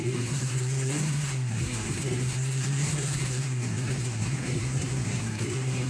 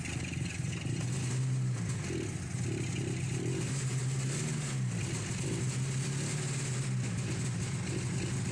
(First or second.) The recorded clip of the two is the second